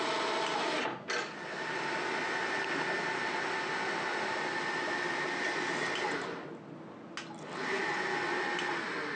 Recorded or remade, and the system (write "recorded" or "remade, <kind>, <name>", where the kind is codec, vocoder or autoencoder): recorded